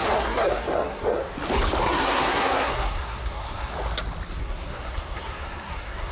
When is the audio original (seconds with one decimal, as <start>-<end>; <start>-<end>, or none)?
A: 1.2-1.8; 3.7-4.4